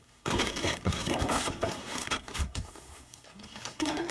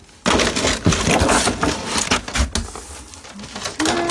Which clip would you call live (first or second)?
second